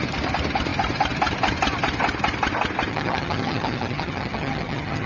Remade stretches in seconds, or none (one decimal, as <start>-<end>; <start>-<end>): 2.9-5.1